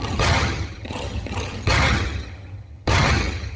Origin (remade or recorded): remade